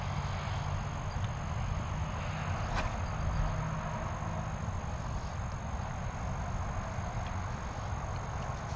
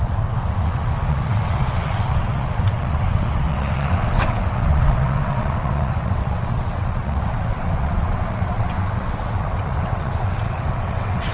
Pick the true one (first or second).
first